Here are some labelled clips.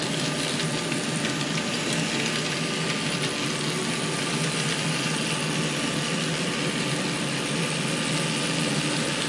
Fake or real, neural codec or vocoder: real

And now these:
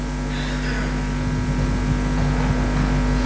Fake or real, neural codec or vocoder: real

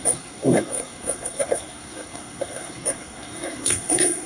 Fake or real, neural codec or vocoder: fake, codec, SNAC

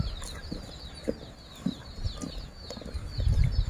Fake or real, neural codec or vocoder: real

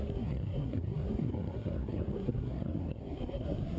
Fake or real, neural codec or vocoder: fake, codec, SNAC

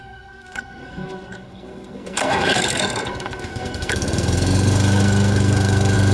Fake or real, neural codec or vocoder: fake, codec, SNAC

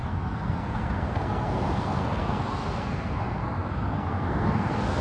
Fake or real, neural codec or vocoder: fake, codec, SNAC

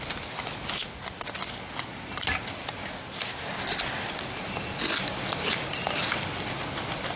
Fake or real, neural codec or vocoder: real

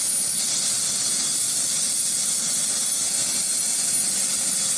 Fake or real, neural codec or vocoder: real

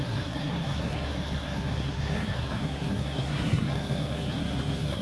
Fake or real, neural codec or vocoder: fake, codec, SNAC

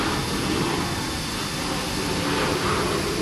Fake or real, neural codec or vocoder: real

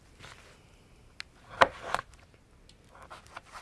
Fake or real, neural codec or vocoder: real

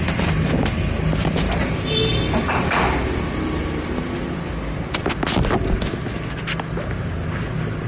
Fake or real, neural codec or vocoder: real